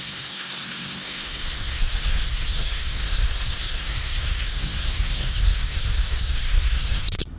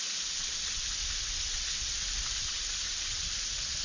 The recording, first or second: second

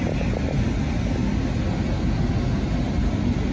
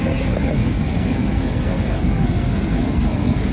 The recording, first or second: first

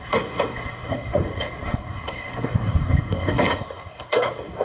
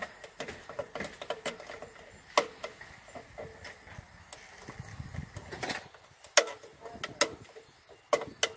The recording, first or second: second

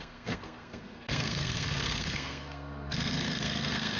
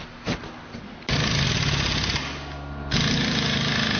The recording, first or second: second